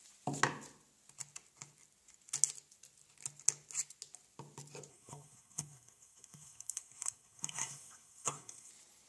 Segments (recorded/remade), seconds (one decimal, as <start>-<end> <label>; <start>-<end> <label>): 0.0-4.9 recorded; 4.9-8.7 remade; 8.7-9.1 recorded